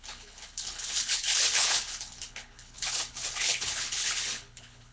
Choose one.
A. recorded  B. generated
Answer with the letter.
B